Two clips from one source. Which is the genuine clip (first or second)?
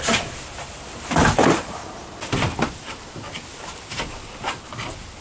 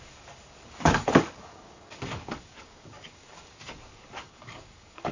first